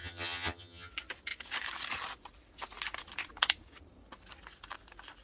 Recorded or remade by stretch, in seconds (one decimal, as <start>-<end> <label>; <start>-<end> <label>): 0.0-0.9 remade; 0.9-5.2 recorded